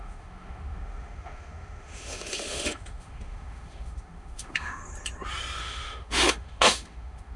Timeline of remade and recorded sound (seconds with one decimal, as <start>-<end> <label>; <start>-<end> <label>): 0.0-4.8 remade; 4.8-5.6 recorded; 5.6-7.4 remade